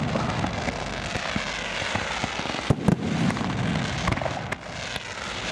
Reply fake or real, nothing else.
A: real